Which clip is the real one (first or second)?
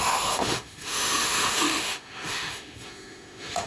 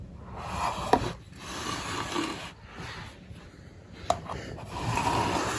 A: second